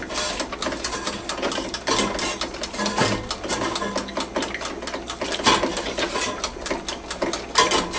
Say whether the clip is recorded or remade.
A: recorded